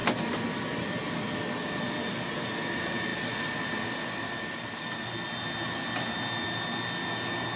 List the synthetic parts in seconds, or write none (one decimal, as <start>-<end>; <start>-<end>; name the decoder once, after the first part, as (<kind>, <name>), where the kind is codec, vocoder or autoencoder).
none